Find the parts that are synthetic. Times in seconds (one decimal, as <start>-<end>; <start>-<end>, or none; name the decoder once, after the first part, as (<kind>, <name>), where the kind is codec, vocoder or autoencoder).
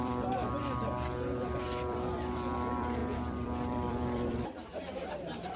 0.0-0.6 (vocoder, BigVGAN v2); 1.4-5.6